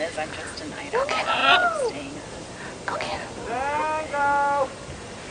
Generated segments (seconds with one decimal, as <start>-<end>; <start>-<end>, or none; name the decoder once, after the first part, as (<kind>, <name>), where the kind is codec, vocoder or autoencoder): 3.1-5.3 (vocoder, BigVGAN v2)